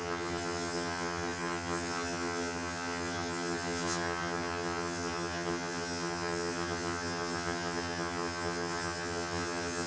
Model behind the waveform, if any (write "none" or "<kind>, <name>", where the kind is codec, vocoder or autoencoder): vocoder, HiFi-GAN